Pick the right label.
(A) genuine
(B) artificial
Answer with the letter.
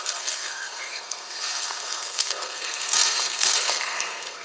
B